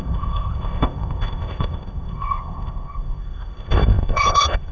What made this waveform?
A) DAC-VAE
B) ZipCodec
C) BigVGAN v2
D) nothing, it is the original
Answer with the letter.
B